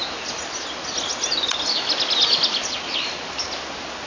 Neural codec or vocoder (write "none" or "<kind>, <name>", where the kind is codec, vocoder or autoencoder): none